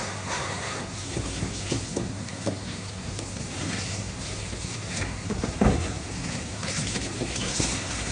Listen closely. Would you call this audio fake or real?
fake